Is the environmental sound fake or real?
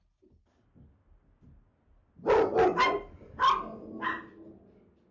real